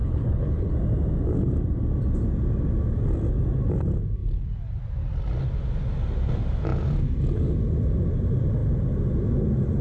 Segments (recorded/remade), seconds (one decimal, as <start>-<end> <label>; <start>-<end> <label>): 0.0-0.7 remade; 0.7-9.8 recorded